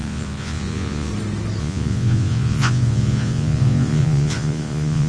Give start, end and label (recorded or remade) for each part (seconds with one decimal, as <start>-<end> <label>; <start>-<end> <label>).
0.0-1.1 remade; 1.1-1.6 recorded; 1.6-5.1 remade